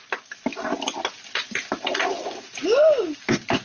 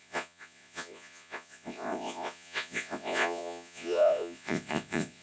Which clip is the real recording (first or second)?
first